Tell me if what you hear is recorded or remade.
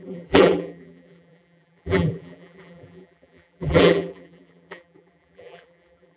remade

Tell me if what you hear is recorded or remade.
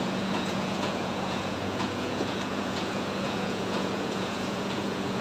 remade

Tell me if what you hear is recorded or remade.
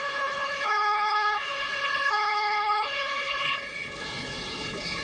remade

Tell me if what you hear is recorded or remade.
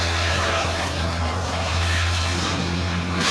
remade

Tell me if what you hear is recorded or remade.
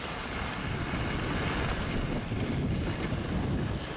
recorded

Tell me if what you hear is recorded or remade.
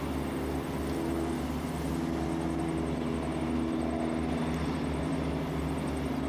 recorded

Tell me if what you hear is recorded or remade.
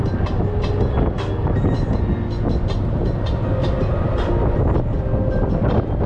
recorded